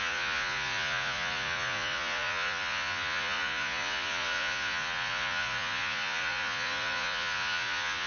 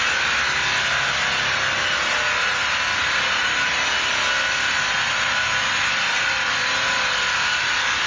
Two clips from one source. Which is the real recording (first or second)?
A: second